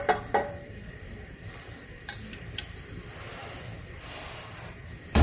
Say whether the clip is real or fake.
fake